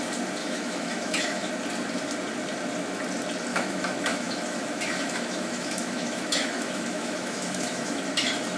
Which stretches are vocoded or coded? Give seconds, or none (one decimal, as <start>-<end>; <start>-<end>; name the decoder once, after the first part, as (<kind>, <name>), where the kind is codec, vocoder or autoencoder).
0.4-1.5 (autoencoder, DAC-VAE); 3.5-8.0

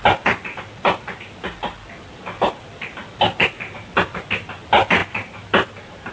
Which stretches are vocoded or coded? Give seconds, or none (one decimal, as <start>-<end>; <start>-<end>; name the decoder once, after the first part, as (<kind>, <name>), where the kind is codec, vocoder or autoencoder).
5.0-6.1 (vocoder, BigVGAN v2)